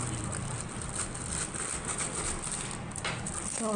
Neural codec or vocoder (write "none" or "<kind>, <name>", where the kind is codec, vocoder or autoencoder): none